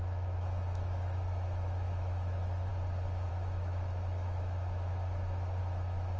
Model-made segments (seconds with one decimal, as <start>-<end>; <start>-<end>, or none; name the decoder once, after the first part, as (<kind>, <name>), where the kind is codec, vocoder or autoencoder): 0.0-2.7 (autoencoder, DAC-VAE); 3.3-6.2